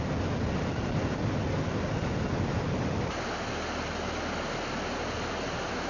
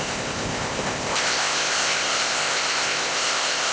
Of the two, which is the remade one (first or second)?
second